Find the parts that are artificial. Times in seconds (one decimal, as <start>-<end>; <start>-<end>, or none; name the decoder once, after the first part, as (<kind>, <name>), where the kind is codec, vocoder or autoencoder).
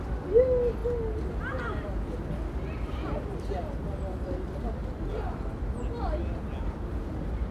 none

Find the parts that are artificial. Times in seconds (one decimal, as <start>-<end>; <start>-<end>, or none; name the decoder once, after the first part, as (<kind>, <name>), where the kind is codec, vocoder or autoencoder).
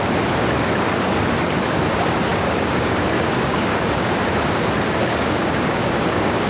2.3-4.1 (codec, DAC); 5.0-6.5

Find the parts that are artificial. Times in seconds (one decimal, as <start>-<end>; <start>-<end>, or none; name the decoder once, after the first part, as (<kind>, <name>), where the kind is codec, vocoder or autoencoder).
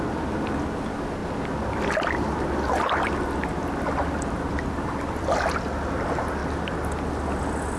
none